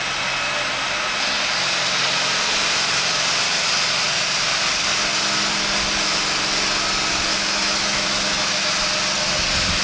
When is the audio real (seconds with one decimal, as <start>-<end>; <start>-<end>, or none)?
0.0-7.3; 8.6-9.8